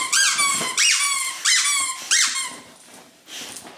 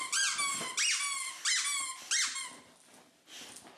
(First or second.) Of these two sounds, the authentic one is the second